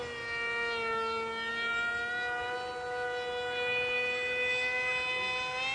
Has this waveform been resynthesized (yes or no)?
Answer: no